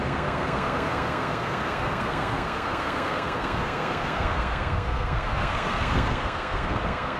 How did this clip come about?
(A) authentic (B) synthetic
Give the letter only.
B